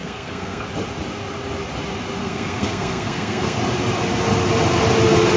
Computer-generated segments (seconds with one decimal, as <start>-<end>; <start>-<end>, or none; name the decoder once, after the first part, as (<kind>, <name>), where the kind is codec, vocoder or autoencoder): 0.0-0.6 (codec, SNAC); 2.2-3.6